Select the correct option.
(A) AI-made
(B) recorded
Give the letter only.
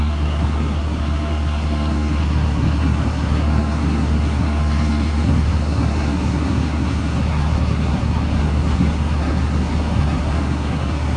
A